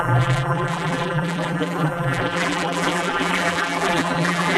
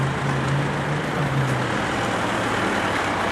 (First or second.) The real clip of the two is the second